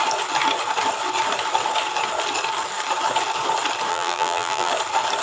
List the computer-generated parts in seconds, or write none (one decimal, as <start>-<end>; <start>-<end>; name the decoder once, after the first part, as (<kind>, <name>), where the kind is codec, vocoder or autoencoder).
3.9-4.7 (vocoder, BigVGAN v2)